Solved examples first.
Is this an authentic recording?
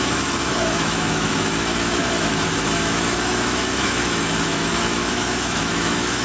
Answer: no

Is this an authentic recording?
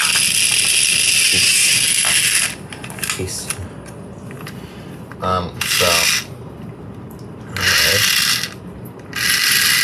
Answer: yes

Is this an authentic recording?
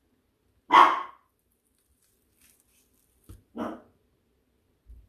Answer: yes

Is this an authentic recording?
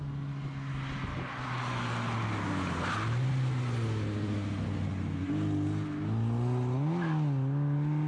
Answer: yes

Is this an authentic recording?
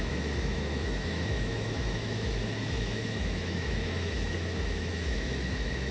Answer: no